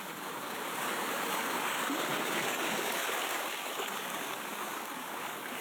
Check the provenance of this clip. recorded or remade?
remade